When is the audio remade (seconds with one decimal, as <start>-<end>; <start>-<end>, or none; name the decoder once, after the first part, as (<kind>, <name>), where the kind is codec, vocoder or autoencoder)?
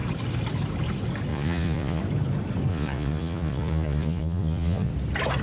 1.3-2.0 (vocoder, Vocos); 2.7-4.9